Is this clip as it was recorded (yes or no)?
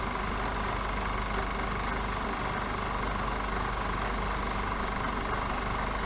yes